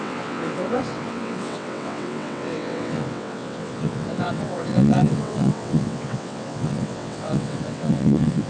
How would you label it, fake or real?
fake